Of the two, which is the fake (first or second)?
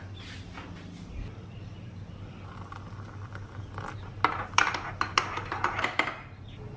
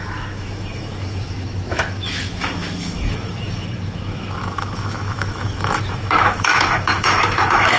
second